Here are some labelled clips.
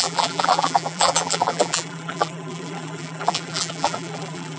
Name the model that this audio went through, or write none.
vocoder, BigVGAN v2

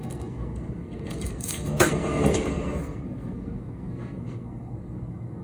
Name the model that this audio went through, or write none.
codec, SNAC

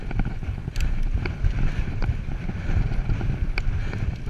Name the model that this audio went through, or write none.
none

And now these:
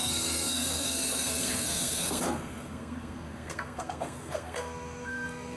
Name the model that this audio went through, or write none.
codec, SNAC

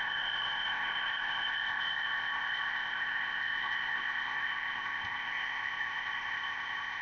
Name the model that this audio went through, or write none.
codec, ZipCodec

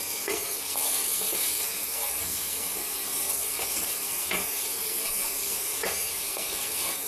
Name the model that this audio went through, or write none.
codec, SNAC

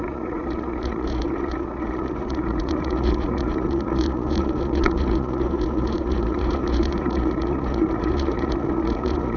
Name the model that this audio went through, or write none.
vocoder, Vocos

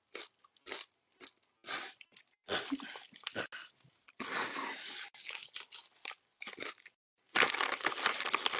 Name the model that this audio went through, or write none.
none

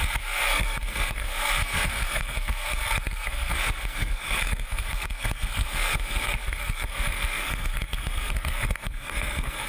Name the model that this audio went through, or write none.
codec, SNAC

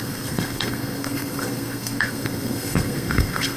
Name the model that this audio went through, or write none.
codec, SNAC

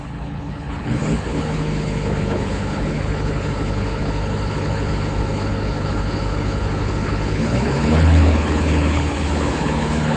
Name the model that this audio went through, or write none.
codec, HILCodec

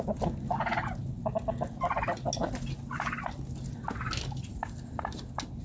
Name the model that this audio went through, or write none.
none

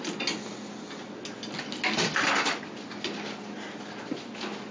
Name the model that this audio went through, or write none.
none